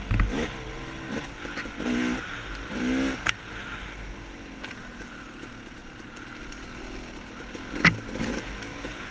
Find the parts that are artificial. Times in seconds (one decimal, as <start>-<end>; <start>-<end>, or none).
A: 5.8-6.4